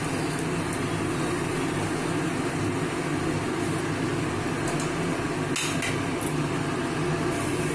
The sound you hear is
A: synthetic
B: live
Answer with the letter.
B